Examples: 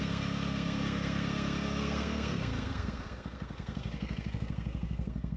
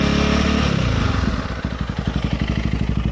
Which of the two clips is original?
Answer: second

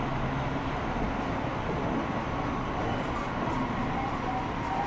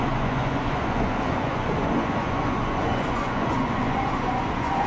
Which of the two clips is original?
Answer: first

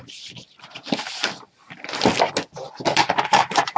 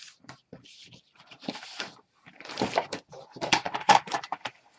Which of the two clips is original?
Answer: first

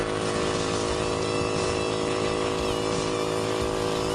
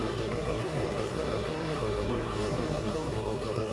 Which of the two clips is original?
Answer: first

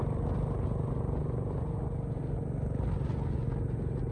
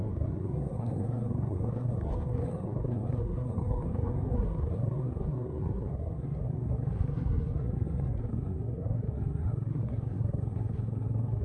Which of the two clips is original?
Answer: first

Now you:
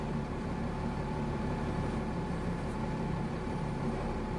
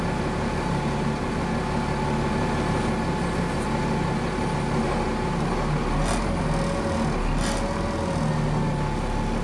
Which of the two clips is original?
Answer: second